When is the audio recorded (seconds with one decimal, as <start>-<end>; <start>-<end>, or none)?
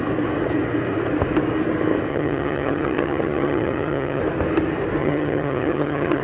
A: 0.0-2.1; 4.2-5.0